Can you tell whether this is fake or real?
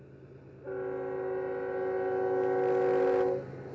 real